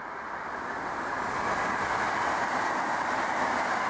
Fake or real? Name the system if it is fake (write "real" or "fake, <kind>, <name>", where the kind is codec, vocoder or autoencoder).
real